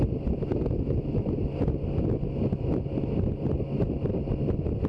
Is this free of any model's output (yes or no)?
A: yes